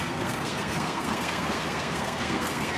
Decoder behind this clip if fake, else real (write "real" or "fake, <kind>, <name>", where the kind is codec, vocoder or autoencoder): fake, codec, SNAC